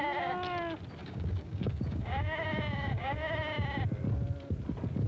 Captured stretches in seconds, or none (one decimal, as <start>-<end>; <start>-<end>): 0.0-1.0; 3.4-5.1